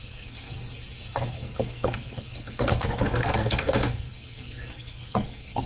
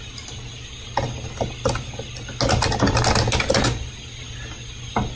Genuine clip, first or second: second